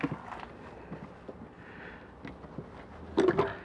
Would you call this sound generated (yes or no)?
no